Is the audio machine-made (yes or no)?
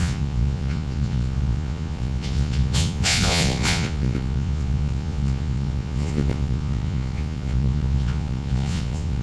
yes